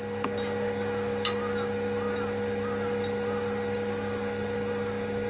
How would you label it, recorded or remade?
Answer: recorded